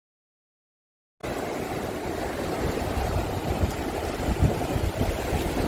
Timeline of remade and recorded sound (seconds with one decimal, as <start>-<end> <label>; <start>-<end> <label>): 0.0-5.7 recorded